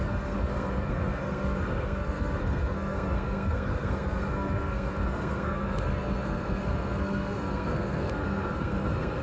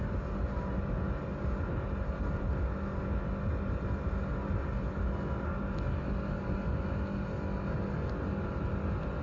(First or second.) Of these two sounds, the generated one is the first